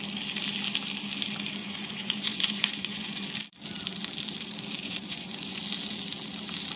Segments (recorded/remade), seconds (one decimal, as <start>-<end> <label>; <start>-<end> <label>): 0.0-1.6 recorded; 1.6-3.3 remade; 3.3-4.8 recorded; 4.8-5.6 remade; 5.6-6.8 recorded